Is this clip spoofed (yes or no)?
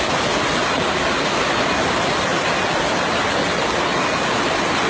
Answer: no